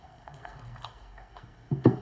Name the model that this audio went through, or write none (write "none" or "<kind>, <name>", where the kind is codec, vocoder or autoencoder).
codec, SNAC